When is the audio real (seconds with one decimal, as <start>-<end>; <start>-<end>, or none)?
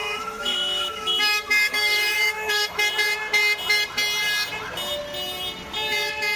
2.8-6.4